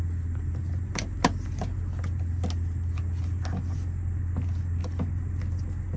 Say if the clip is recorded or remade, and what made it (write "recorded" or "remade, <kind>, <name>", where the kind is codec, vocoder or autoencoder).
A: recorded